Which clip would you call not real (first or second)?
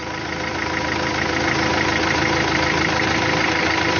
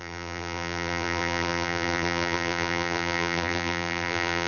second